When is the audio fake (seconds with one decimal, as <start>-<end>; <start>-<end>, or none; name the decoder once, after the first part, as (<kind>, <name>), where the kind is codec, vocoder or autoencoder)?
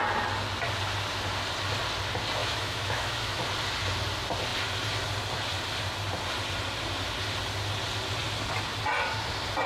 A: 2.4-3.4 (autoencoder, DAC-VAE)